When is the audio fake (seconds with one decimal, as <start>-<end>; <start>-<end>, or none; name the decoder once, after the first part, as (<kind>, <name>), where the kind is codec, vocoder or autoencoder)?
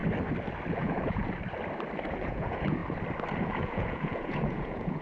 0.7-1.2 (vocoder, Vocos); 2.1-2.8; 3.4-5.0